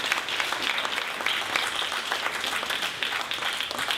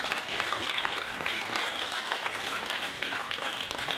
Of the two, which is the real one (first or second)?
first